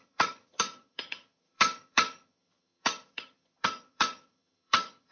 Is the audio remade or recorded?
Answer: remade